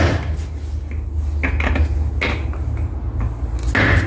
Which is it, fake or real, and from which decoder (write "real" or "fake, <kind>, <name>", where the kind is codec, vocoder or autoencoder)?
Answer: real